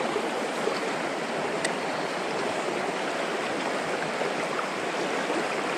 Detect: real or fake real